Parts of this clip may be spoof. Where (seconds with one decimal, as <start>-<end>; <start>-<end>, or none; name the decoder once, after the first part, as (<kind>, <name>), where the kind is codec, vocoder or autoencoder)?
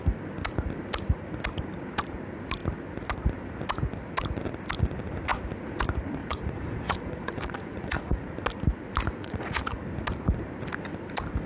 6.2-8.2 (vocoder, Vocos); 9.2-9.8